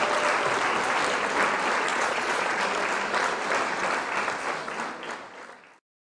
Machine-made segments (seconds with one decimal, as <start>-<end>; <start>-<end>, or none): 1.9-2.6